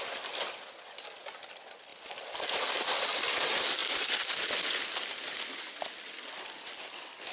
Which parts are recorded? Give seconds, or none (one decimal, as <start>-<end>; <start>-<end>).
0.0-7.3